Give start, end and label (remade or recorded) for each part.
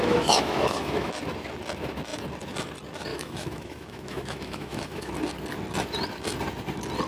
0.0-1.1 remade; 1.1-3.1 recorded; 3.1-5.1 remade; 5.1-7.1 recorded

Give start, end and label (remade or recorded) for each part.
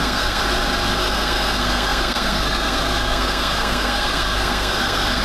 0.0-0.4 remade; 0.4-1.0 recorded; 1.0-5.2 remade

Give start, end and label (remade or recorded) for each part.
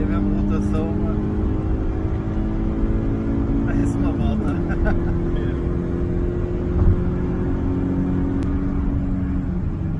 0.0-10.0 recorded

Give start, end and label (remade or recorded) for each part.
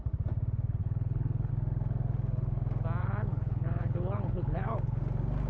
0.0-0.8 recorded; 0.8-1.5 remade; 1.5-3.0 recorded; 3.0-5.0 remade; 5.0-5.5 recorded